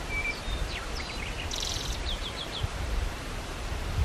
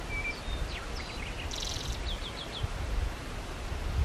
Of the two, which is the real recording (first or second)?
second